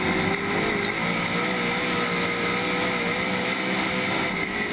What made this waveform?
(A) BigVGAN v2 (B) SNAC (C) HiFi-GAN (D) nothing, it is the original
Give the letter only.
D